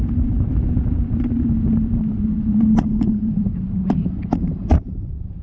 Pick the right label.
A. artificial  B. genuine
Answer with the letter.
A